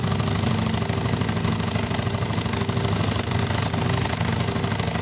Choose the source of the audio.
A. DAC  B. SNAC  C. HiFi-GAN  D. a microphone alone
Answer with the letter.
D